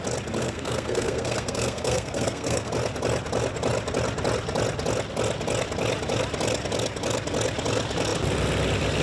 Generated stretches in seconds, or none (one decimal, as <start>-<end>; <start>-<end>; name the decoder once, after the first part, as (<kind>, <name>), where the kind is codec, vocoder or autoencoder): 0.4-2.7 (codec, SNAC)